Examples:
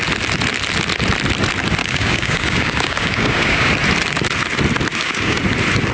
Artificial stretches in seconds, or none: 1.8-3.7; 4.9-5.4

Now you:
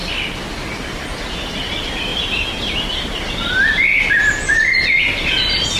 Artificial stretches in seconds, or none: none

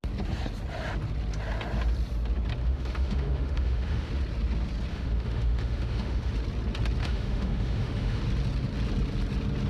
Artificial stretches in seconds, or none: 2.6-4.1; 4.9-6.3; 7.0-8.2

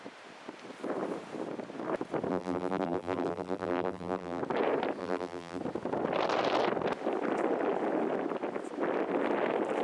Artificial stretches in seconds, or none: 2.3-4.4; 5.0-5.6

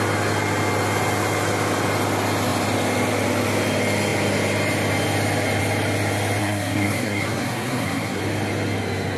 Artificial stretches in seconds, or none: 6.4-8.2

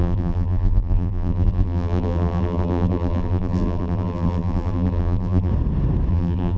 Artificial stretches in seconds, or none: 0.0-5.5; 6.1-6.6

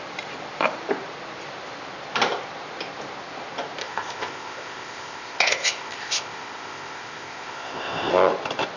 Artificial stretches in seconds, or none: 3.8-8.1